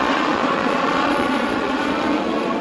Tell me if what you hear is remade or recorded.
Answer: remade